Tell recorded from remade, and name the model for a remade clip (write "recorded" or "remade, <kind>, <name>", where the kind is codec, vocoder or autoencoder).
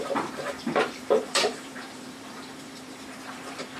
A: remade, vocoder, BigVGAN v2